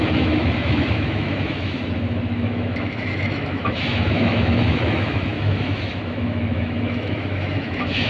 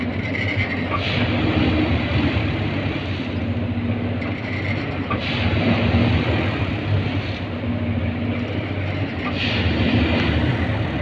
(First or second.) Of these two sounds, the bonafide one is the second